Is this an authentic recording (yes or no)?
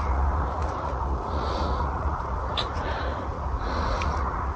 no